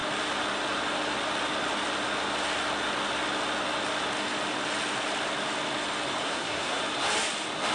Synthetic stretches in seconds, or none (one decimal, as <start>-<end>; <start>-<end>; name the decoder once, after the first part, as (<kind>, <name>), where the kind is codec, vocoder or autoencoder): 6.2-6.8 (codec, SNAC)

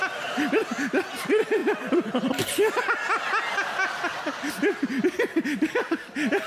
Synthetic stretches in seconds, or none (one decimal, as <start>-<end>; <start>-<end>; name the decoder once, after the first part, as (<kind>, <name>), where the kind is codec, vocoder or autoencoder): none

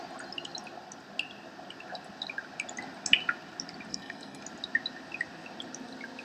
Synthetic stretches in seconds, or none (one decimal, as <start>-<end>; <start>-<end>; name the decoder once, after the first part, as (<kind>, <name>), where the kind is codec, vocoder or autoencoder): 3.9-4.4 (codec, SNAC)

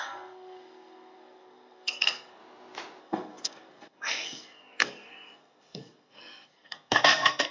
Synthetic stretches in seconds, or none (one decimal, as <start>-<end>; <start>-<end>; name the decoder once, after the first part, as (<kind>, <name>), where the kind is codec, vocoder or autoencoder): 0.0-2.4 (codec, SNAC); 3.0-7.5

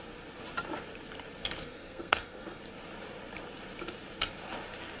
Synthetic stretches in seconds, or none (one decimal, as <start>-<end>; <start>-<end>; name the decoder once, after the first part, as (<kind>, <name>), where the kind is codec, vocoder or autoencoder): 1.6-2.6 (codec, SNAC)